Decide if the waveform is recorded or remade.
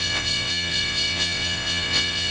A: remade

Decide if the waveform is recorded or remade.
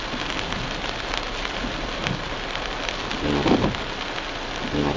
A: recorded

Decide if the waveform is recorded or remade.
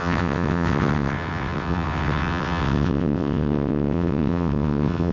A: remade